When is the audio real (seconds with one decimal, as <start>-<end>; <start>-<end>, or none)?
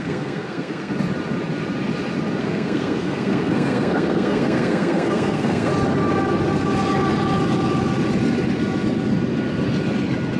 0.9-2.4; 5.7-10.4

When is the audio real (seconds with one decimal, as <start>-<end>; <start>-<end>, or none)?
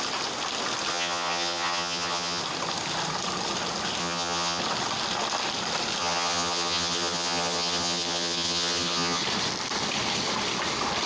0.0-0.9; 2.4-4.0; 4.6-6.0; 9.2-11.1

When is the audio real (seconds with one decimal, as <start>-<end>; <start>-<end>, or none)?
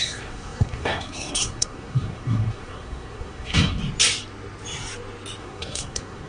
3.8-5.4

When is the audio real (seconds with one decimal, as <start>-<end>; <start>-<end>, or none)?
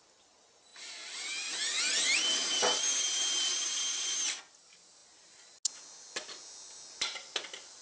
0.0-7.8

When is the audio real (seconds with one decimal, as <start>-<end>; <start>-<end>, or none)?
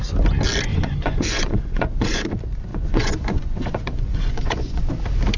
0.0-0.7; 2.3-2.7; 4.8-5.4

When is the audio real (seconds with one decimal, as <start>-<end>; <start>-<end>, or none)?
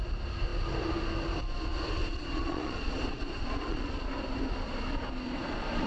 0.0-2.0; 4.1-5.9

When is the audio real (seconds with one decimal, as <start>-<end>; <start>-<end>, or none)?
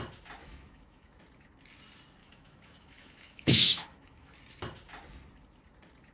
0.0-0.4; 1.2-2.2; 4.3-6.1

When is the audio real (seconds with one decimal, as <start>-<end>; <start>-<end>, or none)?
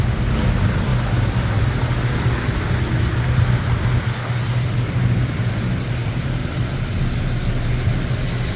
0.0-8.6